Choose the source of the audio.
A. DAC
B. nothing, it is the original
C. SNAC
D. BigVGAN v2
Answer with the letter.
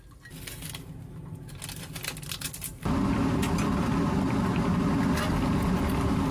B